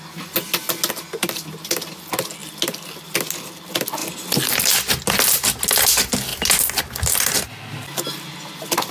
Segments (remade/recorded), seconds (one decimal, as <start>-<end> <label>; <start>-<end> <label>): 0.0-8.9 recorded